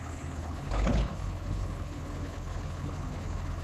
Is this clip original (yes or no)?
no